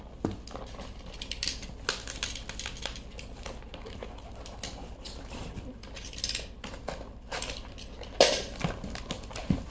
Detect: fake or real real